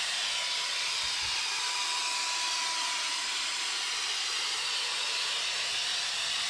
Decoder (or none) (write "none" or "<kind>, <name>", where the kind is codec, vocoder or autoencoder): none